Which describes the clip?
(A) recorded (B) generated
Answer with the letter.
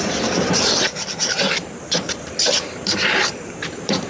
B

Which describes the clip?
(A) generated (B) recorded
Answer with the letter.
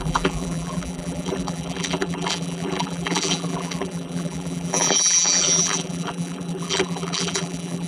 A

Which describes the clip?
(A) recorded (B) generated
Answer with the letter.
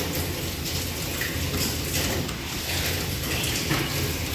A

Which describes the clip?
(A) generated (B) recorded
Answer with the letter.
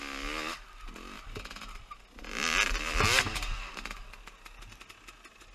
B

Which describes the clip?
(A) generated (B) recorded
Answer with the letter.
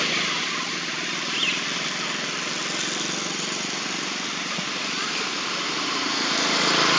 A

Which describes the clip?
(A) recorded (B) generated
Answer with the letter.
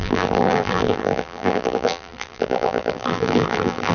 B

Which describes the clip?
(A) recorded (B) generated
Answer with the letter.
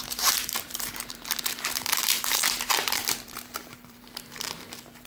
B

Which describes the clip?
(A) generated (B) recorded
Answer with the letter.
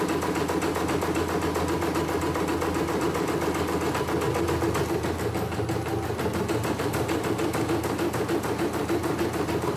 B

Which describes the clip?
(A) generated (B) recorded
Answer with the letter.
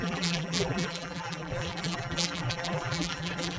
A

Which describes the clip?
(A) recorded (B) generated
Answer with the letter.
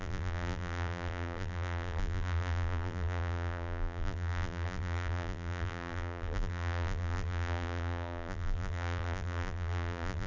B